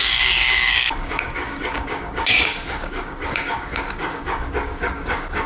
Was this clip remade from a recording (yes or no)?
yes